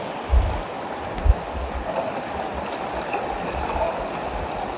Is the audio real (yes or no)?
yes